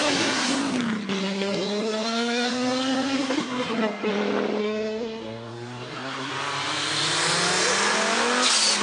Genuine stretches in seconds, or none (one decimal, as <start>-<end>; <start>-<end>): 0.6-1.2; 4.1-4.6; 6.3-8.8